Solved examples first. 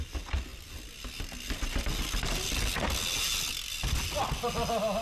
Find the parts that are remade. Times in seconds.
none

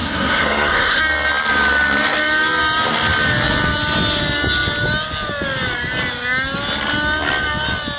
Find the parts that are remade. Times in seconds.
0.0-1.0 (codec, SNAC)